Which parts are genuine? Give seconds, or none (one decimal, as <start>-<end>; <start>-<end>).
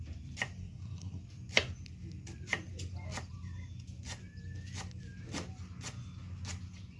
0.0-0.6; 1.2-7.0